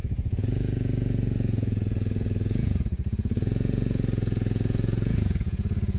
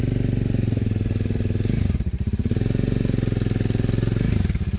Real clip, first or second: second